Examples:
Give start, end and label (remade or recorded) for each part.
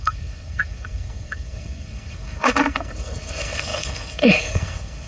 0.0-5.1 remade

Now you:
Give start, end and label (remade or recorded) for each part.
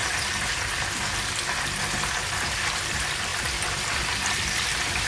0.0-5.1 recorded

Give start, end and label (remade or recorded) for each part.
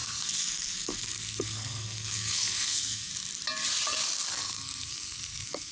0.0-3.1 remade; 3.1-4.3 recorded; 4.3-5.7 remade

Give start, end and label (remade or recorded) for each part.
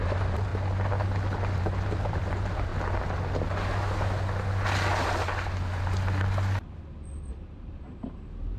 0.0-0.5 remade; 0.5-1.6 recorded; 1.6-2.7 remade; 2.7-7.3 recorded; 7.3-8.6 remade